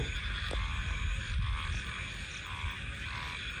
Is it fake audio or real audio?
real